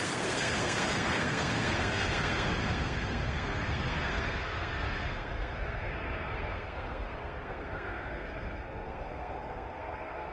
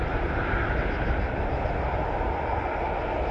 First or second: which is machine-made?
first